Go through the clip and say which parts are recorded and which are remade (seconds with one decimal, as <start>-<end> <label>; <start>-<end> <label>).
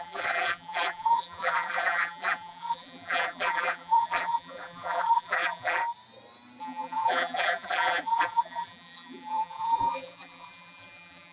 0.0-5.8 remade; 5.8-6.6 recorded; 6.6-11.3 remade